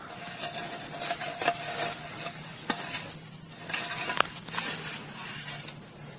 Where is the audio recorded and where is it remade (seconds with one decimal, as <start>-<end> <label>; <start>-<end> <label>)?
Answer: 0.0-6.2 recorded

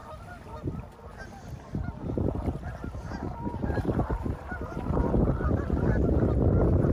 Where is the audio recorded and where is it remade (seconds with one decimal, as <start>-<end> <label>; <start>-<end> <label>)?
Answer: 0.0-3.6 recorded; 3.6-4.7 remade; 4.7-6.9 recorded

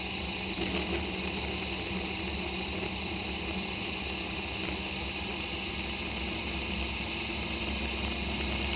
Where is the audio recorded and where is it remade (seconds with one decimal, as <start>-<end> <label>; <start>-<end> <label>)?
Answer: 0.0-8.8 recorded

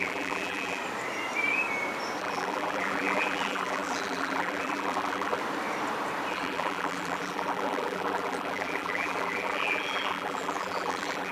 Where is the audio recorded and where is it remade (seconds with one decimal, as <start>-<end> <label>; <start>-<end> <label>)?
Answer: 0.0-0.8 remade; 0.8-2.2 recorded; 2.2-5.4 remade; 5.4-6.3 recorded; 6.3-11.3 remade